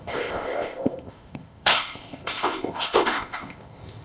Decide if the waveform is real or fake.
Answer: fake